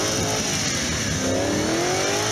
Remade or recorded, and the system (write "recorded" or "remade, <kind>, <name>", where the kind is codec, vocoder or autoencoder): recorded